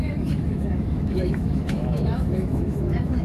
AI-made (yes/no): yes